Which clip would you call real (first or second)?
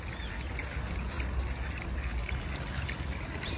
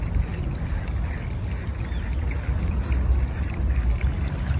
first